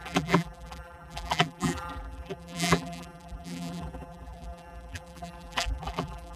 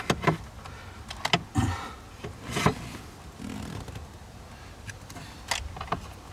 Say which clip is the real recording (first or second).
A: second